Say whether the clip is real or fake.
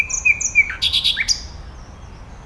real